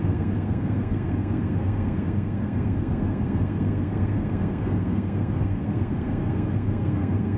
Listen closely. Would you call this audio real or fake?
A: fake